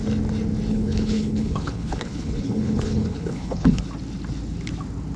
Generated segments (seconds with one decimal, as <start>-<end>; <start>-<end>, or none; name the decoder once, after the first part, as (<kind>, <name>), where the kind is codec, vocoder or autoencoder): 0.7-3.8 (codec, HILCodec)

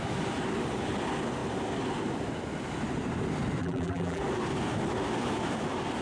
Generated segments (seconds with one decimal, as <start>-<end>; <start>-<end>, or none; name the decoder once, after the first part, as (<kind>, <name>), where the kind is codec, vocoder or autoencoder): 3.6-4.2 (vocoder, BigVGAN v2)

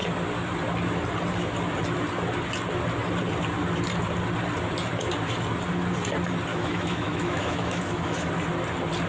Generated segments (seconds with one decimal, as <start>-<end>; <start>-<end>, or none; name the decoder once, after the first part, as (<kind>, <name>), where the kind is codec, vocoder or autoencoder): 6.5-8.3 (autoencoder, DAC-VAE)

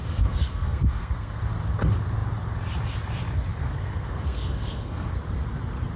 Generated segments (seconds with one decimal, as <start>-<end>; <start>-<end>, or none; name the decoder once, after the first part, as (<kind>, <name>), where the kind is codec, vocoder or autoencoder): 0.0-1.4 (codec, SNAC); 3.6-5.1

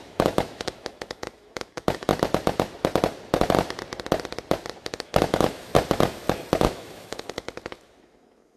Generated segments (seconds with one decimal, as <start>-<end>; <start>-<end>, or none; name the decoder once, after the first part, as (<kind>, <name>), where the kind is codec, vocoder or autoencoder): 0.0-2.1 (autoencoder, DAC-VAE); 4.8-5.7; 6.6-8.6

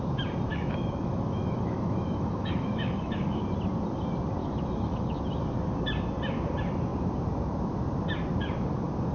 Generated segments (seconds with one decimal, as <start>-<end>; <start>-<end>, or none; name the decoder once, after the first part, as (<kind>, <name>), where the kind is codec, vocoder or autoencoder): 0.5-3.4 (autoencoder, DAC-VAE); 4.4-5.2

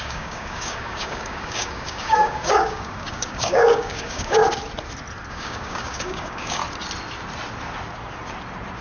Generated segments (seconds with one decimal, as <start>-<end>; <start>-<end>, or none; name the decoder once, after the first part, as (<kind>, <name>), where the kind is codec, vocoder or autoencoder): 0.0-4.4 (codec, DAC); 5.3-6.6

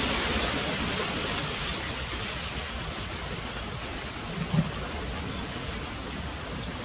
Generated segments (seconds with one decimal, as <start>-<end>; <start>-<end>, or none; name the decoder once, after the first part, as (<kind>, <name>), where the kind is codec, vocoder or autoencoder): none